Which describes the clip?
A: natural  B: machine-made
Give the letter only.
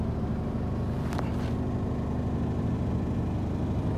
A